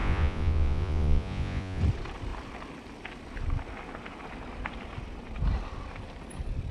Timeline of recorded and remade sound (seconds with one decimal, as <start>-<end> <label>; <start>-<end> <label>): 0.0-1.8 remade; 1.8-6.7 recorded